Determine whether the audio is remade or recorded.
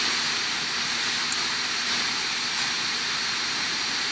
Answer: remade